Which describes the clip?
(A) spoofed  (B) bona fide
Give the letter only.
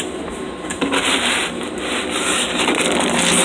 B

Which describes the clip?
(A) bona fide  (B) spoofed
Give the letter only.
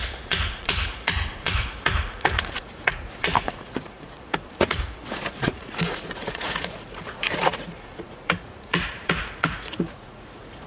B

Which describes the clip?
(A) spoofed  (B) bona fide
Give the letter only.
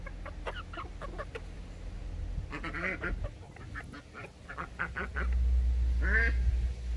B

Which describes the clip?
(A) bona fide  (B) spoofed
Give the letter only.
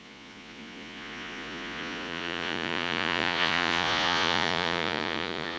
B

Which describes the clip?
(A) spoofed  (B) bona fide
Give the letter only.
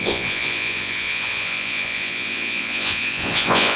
A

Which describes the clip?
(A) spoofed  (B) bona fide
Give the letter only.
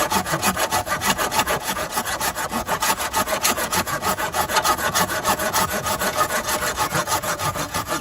A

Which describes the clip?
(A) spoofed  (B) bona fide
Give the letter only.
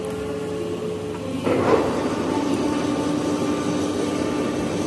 B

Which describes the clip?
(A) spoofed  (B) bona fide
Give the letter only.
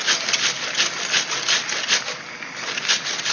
B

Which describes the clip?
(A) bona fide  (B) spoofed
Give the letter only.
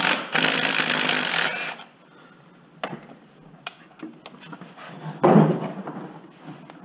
A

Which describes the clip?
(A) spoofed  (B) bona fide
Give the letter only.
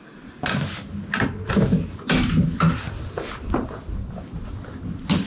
B